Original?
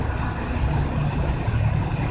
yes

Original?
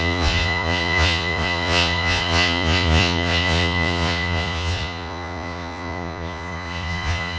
no